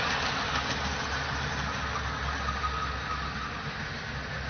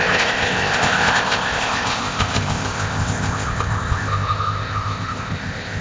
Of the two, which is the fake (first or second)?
second